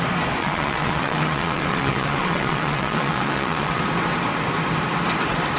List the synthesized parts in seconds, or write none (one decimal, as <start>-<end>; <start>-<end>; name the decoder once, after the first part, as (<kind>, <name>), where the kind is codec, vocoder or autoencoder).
0.4-3.8 (vocoder, WaveNeXt)